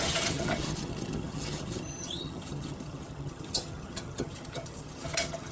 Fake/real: fake